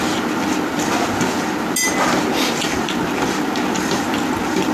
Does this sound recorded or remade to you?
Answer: recorded